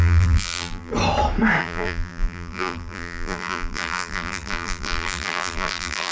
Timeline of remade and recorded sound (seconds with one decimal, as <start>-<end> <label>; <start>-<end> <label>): 0.0-0.9 remade; 0.9-1.6 recorded; 1.6-6.1 remade